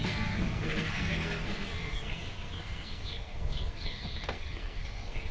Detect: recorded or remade remade